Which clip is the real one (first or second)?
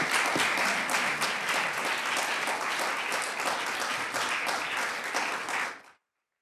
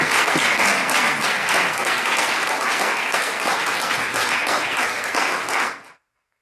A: first